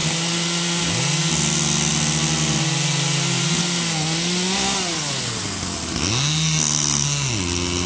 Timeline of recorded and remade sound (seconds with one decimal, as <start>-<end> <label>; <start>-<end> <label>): 0.0-0.8 remade; 0.8-7.9 recorded

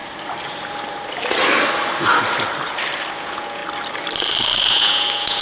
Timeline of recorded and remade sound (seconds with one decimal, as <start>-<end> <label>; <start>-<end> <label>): 0.0-3.2 recorded; 3.2-3.6 remade; 3.6-4.6 recorded; 4.6-5.4 remade

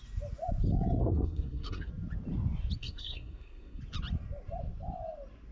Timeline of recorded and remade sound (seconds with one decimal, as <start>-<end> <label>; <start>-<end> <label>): 0.0-1.0 recorded; 1.0-1.9 remade; 1.9-2.8 recorded; 2.8-3.8 remade; 3.8-5.5 recorded

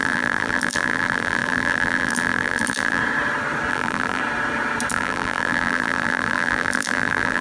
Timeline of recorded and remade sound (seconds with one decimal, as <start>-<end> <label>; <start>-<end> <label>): 0.0-3.0 remade; 3.0-3.7 recorded; 3.7-4.2 remade; 4.2-4.9 recorded; 4.9-7.4 remade

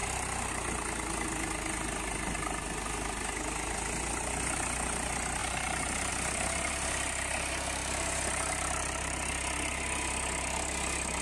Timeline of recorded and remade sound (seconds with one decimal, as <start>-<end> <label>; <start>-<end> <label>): 0.0-0.5 remade; 0.5-5.4 recorded; 5.4-6.1 remade; 6.1-7.8 recorded; 7.8-9.3 remade; 9.3-11.2 recorded

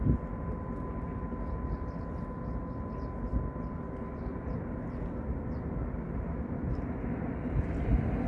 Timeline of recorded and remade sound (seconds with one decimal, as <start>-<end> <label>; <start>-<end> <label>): 0.0-8.3 recorded

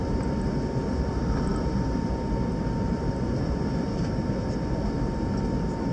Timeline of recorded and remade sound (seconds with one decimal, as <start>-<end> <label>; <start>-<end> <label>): 0.0-5.9 recorded